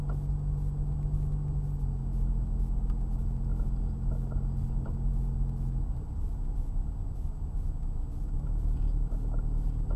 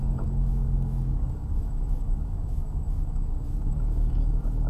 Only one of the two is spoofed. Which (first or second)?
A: second